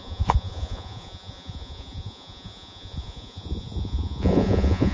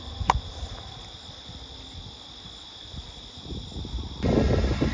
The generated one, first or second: first